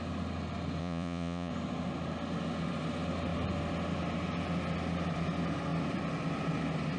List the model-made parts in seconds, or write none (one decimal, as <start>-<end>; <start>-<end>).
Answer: 0.8-1.5

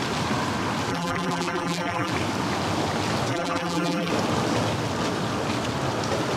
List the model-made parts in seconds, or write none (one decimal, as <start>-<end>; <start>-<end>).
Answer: 0.9-2.1; 3.3-4.1

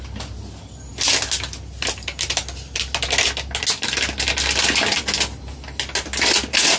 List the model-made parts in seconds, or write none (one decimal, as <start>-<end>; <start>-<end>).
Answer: none